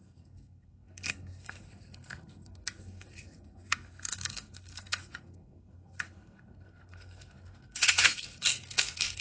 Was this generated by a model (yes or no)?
yes